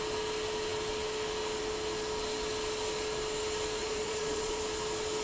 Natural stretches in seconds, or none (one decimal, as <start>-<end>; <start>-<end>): 0.0-3.8; 4.6-5.2